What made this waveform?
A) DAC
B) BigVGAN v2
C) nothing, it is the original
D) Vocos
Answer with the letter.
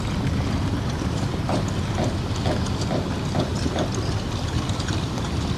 C